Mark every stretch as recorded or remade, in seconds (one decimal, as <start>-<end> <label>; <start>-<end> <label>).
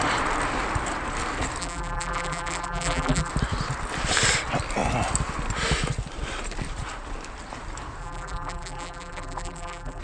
0.0-1.6 recorded; 1.6-3.3 remade; 3.3-8.0 recorded; 8.0-10.0 remade